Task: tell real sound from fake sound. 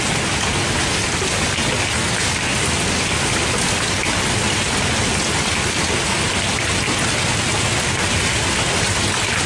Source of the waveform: real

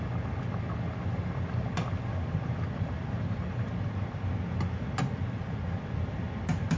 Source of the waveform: real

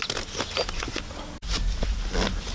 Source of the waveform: real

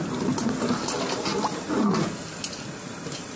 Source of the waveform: real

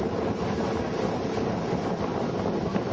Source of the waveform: real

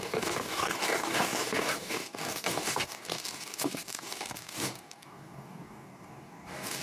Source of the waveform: fake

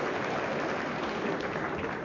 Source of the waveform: real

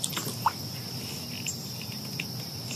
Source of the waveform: real